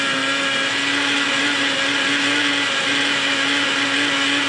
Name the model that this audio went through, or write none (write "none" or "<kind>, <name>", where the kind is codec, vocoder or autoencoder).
none